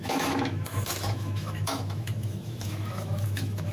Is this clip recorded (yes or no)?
no